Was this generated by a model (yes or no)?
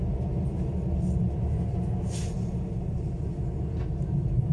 no